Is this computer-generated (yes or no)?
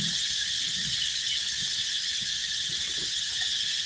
yes